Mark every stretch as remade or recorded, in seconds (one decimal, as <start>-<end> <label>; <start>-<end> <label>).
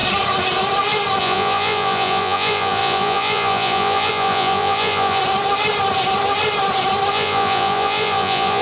0.0-1.2 recorded; 1.2-5.2 remade; 5.2-7.1 recorded; 7.1-8.6 remade